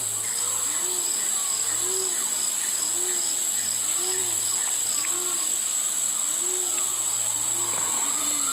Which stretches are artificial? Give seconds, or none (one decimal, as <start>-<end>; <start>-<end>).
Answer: none